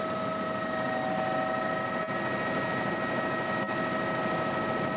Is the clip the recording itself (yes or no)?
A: yes